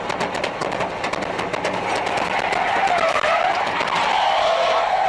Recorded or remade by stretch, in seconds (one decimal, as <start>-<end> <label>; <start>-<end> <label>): 0.0-5.1 recorded